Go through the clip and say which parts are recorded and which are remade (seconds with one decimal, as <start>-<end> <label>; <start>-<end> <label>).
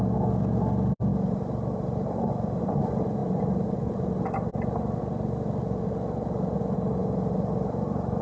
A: 0.0-1.1 recorded; 1.1-2.6 remade; 2.6-7.0 recorded; 7.0-8.2 remade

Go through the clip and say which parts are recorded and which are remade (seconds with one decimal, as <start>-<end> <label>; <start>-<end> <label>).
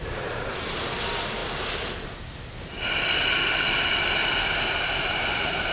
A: 0.0-1.4 remade; 1.4-4.8 recorded; 4.8-5.7 remade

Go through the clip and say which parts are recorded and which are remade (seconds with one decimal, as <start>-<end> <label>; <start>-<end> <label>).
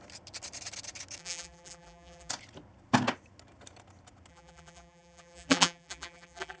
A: 0.0-1.2 recorded; 1.2-2.3 remade; 2.3-4.3 recorded; 4.3-6.6 remade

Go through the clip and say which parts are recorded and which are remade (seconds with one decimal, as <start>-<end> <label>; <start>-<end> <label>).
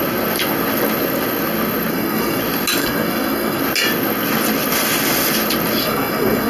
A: 0.0-1.9 recorded; 1.9-2.4 remade; 2.4-2.8 recorded; 2.8-3.6 remade; 3.6-5.8 recorded; 5.8-6.5 remade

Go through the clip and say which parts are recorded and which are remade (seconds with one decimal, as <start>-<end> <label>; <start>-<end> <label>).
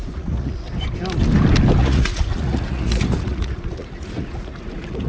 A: 0.0-0.7 remade; 0.7-1.8 recorded; 1.8-5.1 remade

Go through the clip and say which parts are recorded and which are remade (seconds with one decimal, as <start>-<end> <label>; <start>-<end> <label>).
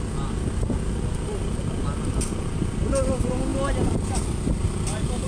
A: 0.0-5.3 recorded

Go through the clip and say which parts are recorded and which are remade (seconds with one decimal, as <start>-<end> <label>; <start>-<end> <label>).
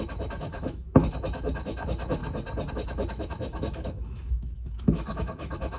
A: 0.0-2.2 remade; 2.2-2.7 recorded; 2.7-5.8 remade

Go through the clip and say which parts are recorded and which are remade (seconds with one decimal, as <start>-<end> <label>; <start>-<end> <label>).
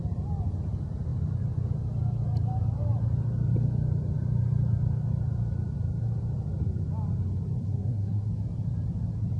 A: 0.0-7.6 recorded; 7.6-8.3 remade; 8.3-9.4 recorded